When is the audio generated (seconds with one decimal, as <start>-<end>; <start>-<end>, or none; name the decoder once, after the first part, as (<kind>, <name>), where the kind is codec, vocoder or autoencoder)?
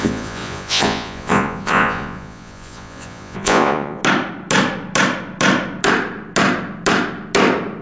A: 0.0-4.0 (vocoder, Vocos)